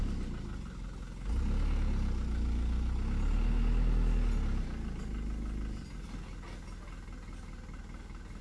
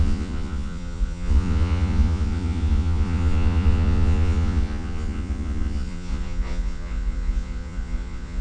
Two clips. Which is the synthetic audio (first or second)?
second